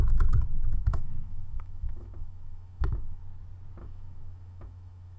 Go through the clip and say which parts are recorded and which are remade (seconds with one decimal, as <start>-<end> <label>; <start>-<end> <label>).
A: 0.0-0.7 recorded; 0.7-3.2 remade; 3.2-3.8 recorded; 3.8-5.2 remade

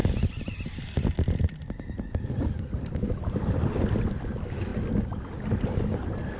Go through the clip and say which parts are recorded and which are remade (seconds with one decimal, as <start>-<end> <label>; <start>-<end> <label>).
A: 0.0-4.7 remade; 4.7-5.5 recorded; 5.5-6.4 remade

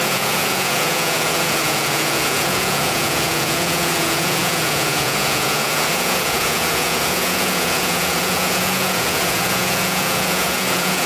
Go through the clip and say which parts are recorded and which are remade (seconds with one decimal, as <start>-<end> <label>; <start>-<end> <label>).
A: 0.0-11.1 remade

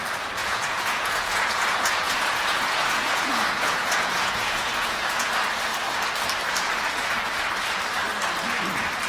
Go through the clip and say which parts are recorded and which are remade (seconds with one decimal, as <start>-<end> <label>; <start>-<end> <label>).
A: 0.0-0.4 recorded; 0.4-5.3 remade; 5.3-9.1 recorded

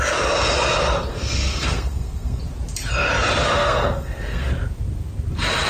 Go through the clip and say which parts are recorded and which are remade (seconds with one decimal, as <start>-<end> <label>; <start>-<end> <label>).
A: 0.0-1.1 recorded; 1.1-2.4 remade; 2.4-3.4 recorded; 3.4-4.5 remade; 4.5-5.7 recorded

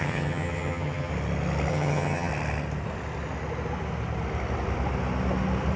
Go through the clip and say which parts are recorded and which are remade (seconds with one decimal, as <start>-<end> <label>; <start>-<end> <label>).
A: 0.0-1.1 remade; 1.1-1.7 recorded; 1.7-2.3 remade; 2.3-5.8 recorded

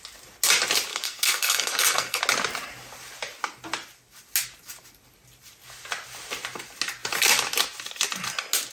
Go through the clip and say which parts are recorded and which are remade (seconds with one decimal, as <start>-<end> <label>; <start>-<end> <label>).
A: 0.0-0.9 recorded; 0.9-2.2 remade; 2.2-8.7 recorded